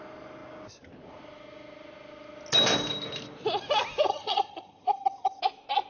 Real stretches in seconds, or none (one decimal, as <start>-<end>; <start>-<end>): 0.0-4.1; 5.4-5.9